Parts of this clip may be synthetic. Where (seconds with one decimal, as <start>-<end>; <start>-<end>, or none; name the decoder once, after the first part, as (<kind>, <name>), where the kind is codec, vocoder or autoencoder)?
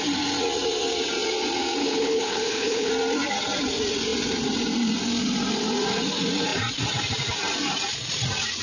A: 1.8-2.9 (codec, HILCodec)